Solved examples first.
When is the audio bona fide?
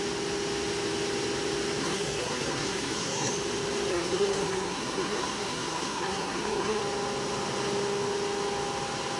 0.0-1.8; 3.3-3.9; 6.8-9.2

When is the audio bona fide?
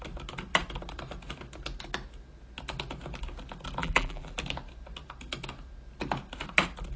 0.0-3.8; 4.3-7.0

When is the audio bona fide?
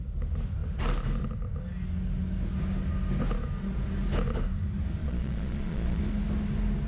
0.0-5.0; 6.0-6.9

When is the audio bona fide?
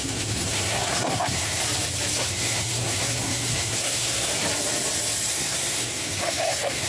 1.6-2.2; 4.3-5.3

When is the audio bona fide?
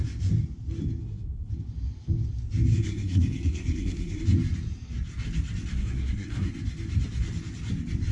0.0-1.0; 1.5-2.7; 4.2-5.7; 6.5-8.1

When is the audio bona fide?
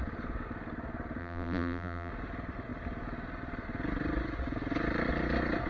0.0-1.2; 2.1-5.7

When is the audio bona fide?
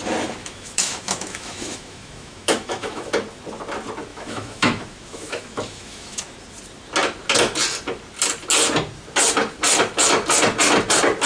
0.0-0.4; 3.1-4.1; 6.2-11.3